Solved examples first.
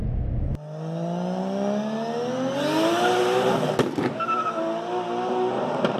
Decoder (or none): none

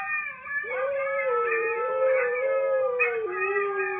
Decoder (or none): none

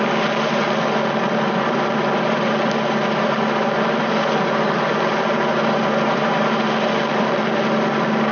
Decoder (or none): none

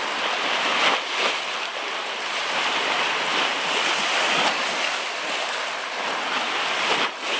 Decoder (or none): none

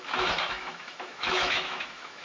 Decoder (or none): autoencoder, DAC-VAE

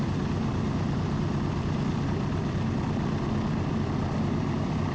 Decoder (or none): none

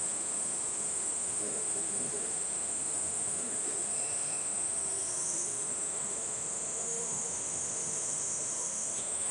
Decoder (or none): autoencoder, DAC-VAE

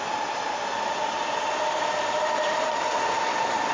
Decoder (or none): none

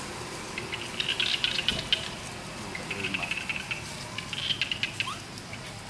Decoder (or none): none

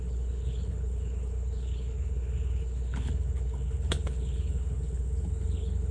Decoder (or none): codec, HILCodec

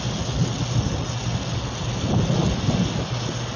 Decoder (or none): none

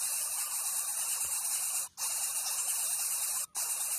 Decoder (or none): none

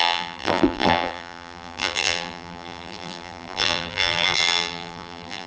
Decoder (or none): vocoder, BigVGAN v2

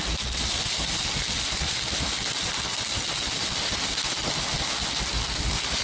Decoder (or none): none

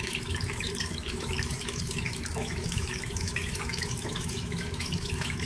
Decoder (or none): autoencoder, DAC-VAE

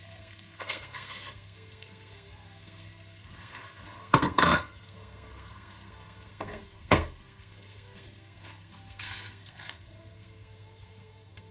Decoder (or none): codec, SNAC